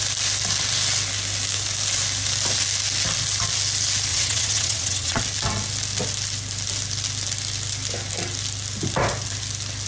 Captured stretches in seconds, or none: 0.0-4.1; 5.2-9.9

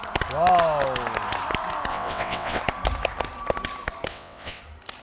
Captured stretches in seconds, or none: 0.0-1.9; 2.6-4.1; 4.6-5.0

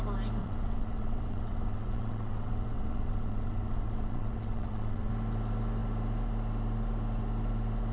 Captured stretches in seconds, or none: 0.0-0.4; 5.1-7.9

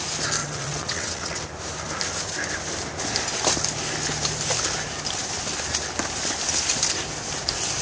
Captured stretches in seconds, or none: 0.0-0.4; 1.4-7.8